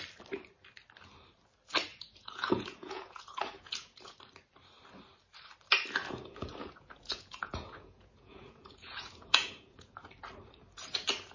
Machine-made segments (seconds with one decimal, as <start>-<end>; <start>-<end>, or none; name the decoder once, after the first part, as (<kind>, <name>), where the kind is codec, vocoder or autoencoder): 1.9-4.1 (vocoder, Vocos); 6.0-10.1